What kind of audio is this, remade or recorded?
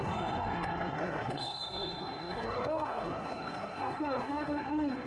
remade